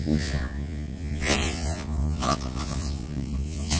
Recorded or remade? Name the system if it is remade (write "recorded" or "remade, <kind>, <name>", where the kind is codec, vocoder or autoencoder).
remade, vocoder, Vocos